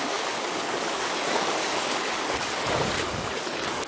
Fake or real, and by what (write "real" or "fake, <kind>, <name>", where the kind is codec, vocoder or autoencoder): fake, codec, DAC